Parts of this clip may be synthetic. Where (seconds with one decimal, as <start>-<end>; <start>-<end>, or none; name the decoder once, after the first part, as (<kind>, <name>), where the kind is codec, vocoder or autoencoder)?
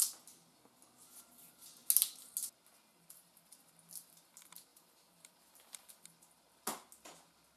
4.7-5.9 (vocoder, BigVGAN v2)